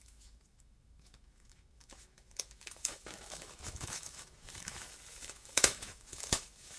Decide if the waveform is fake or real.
fake